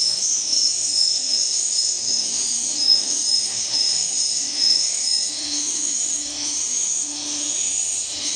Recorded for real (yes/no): no